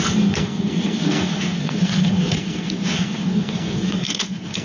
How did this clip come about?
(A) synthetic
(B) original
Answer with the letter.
A